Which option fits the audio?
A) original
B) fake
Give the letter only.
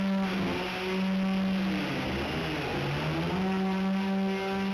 A